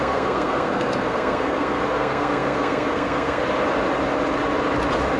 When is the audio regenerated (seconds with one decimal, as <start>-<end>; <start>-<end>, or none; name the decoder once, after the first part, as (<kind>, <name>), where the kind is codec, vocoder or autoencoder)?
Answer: 0.0-3.4 (codec, SNAC)

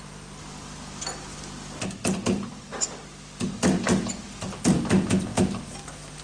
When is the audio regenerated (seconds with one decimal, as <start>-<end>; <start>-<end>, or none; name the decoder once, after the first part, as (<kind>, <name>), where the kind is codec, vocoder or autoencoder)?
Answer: none

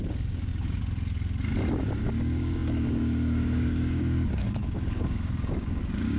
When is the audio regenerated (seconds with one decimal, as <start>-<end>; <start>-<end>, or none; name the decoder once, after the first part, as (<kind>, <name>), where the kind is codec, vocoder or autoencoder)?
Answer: 0.0-0.5 (codec, DAC); 2.0-6.2

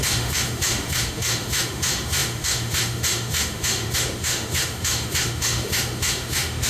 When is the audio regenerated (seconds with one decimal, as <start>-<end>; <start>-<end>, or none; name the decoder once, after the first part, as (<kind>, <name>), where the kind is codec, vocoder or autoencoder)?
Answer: 0.0-6.7 (autoencoder, DAC-VAE)

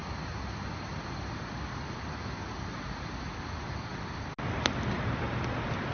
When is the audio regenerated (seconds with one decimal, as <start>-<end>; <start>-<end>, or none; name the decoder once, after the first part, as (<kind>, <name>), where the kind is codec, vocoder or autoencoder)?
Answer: none

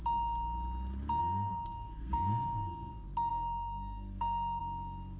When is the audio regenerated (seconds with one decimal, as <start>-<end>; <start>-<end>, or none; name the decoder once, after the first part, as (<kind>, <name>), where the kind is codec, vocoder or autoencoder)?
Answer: 1.2-2.9 (codec, SNAC); 3.3-4.6

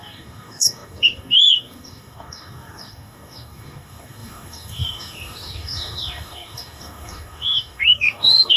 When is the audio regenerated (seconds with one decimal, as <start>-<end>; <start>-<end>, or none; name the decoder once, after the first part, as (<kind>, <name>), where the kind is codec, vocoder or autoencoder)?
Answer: 0.0-8.6 (codec, DAC)

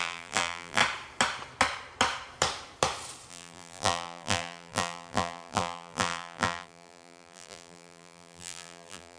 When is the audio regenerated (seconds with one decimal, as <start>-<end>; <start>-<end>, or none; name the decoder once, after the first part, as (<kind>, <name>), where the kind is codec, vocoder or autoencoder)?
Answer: 0.0-0.8 (vocoder, BigVGAN v2); 3.3-9.2